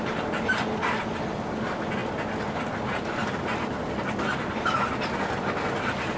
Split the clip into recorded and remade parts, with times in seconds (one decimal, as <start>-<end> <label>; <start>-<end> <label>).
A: 0.0-6.2 recorded